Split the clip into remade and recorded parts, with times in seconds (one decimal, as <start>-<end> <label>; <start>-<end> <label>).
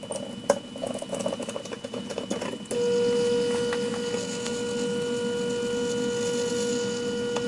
0.0-0.8 recorded; 0.8-2.2 remade; 2.2-7.5 recorded